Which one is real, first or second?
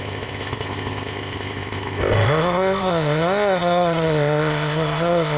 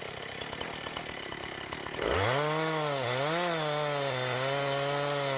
second